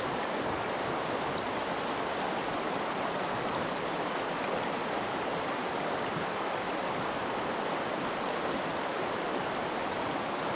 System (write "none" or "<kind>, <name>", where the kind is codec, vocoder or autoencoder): none